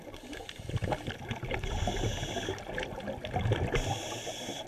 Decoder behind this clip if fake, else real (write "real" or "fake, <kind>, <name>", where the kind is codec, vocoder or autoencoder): real